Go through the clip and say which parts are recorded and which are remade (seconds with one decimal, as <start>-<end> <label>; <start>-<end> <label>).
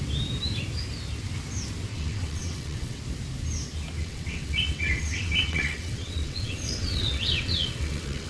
0.0-1.9 recorded; 1.9-3.0 remade; 3.0-4.0 recorded; 4.0-8.3 remade